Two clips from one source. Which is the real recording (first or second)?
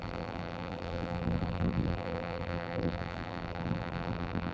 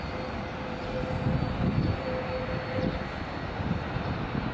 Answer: second